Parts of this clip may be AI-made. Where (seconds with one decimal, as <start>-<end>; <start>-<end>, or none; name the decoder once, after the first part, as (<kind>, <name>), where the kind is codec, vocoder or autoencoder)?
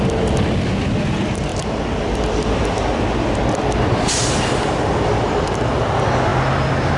none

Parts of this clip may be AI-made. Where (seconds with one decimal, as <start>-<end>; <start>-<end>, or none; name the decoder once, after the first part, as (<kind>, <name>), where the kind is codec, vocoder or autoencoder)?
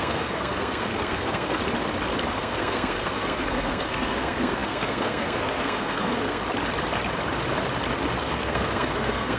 0.0-1.6 (codec, SNAC); 2.3-6.4; 8.2-9.4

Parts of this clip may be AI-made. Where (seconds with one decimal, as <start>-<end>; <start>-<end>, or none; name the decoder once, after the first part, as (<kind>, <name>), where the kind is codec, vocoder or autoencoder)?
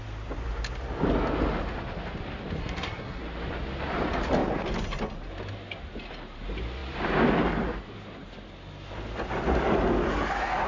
2.6-3.2 (codec, SNAC)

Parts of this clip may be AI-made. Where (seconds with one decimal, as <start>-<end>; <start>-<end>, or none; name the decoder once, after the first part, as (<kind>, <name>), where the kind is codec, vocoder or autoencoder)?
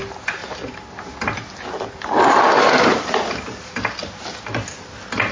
0.4-3.6 (vocoder, BigVGAN v2)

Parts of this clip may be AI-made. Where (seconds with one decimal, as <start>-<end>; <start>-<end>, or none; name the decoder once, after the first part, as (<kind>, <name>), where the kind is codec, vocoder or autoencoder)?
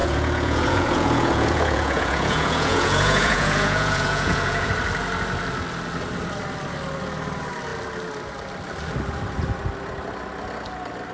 0.0-4.7 (vocoder, Vocos)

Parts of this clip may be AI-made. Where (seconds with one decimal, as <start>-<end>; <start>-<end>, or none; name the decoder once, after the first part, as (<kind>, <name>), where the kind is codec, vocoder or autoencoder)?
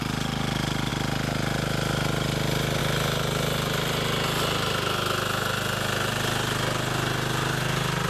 none